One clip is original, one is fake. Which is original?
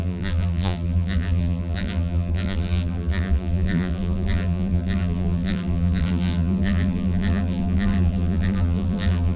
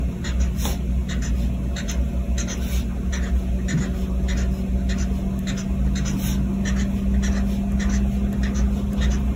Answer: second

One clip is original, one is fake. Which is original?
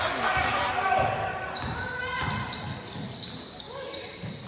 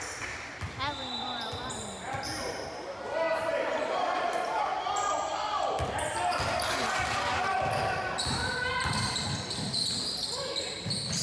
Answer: first